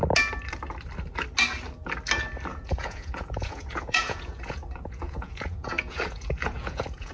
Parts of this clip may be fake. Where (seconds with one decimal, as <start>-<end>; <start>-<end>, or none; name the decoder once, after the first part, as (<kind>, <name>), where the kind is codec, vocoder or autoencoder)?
2.5-7.1 (vocoder, Vocos)